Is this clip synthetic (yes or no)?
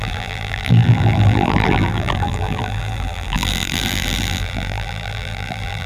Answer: yes